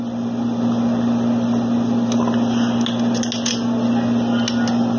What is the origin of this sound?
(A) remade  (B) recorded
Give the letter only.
B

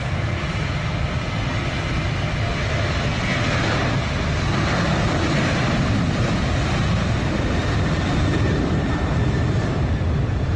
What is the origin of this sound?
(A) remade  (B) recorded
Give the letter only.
B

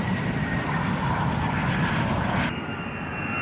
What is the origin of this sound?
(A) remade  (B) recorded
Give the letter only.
B